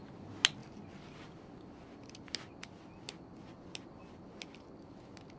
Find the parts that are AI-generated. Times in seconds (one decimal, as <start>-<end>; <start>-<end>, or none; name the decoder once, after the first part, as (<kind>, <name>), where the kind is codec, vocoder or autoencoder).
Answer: none